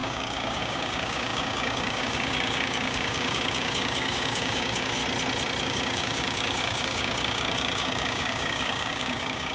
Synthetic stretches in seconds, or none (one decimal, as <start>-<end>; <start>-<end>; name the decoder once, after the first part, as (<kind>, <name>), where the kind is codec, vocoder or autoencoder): 0.0-5.0 (codec, DAC); 5.6-9.5